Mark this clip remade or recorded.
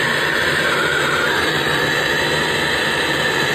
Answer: recorded